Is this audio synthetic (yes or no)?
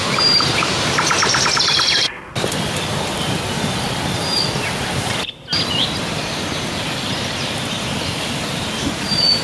yes